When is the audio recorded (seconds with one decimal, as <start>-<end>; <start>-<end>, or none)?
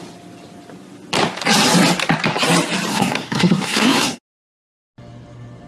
0.0-2.9; 4.2-5.7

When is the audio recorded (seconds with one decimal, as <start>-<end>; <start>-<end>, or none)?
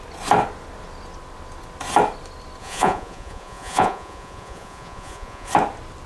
0.0-2.6; 5.5-6.1